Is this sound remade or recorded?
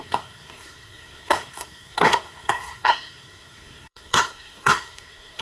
remade